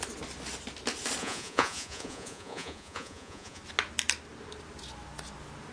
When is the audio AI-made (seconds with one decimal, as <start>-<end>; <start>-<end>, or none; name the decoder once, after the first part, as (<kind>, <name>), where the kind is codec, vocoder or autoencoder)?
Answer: 1.2-3.6 (vocoder, Vocos)